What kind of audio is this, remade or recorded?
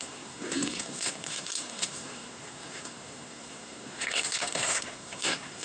remade